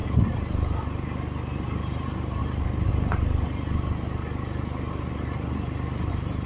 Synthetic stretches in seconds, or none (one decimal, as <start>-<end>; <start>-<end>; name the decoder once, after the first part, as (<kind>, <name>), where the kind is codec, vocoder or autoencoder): 1.6-2.4 (vocoder, BigVGAN v2); 6.1-6.5